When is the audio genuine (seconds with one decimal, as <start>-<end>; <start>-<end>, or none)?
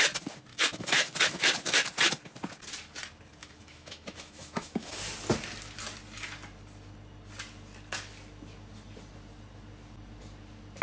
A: 0.0-0.5; 1.4-3.4; 5.0-10.8